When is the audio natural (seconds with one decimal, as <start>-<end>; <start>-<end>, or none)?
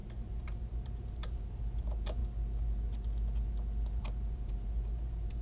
2.2-4.0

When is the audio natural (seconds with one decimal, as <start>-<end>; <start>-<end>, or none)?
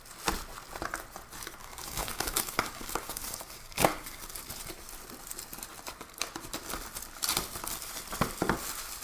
0.0-1.6; 4.2-9.0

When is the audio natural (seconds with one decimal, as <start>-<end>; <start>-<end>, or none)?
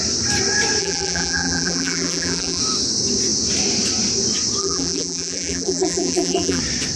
0.0-0.8; 2.6-4.6; 6.6-7.0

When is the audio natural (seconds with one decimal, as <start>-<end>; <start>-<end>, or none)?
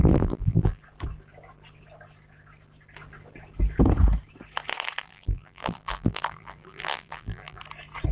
0.8-5.0; 7.6-8.1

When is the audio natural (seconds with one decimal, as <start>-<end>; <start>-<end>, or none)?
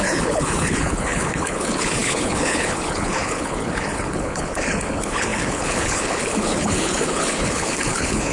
none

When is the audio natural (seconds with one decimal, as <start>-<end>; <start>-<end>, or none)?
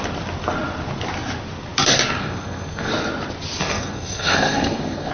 0.0-2.2; 2.9-3.6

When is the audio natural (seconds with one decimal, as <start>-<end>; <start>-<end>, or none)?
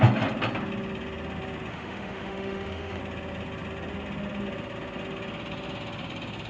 0.0-1.7; 3.0-6.5